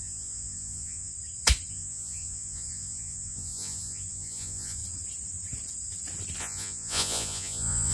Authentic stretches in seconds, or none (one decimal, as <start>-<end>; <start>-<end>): 1.1-1.7; 4.8-6.4